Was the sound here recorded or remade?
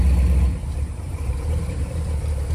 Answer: recorded